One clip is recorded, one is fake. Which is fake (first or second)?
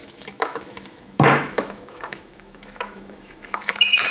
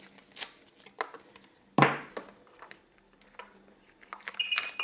first